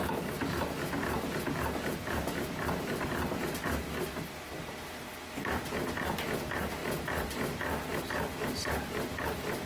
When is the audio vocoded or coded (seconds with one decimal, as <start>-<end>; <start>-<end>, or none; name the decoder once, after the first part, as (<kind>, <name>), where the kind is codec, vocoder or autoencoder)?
none